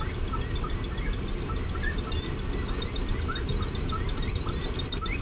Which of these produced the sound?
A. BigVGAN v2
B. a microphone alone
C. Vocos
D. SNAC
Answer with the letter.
B